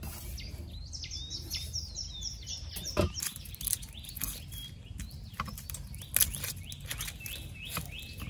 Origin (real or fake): real